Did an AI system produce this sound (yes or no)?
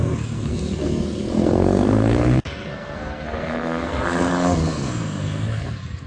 yes